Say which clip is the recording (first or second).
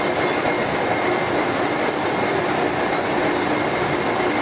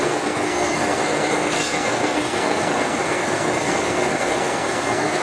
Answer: first